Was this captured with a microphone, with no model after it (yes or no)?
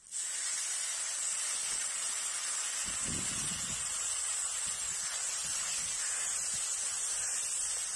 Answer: yes